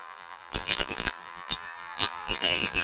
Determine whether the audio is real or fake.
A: fake